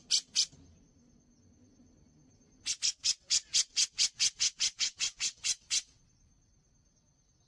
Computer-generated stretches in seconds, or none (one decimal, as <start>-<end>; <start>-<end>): 2.9-6.0